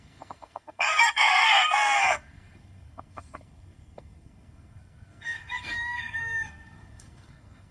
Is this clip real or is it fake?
fake